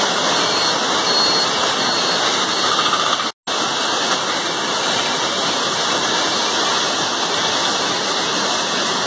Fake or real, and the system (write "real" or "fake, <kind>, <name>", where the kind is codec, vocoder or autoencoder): real